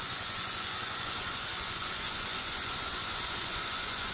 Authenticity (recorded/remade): remade